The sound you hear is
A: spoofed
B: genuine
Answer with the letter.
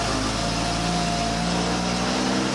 B